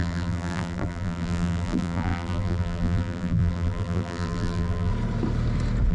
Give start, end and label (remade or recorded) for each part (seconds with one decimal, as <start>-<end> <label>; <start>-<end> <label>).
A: 0.0-4.9 remade; 4.9-5.9 recorded